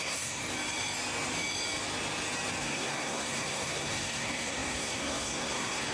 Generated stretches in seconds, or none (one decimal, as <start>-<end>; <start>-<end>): 0.0-0.4; 2.6-5.9